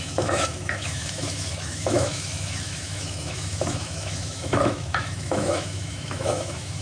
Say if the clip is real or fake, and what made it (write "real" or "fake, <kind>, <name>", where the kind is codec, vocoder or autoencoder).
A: fake, autoencoder, DAC-VAE